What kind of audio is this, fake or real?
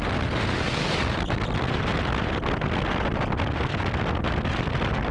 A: real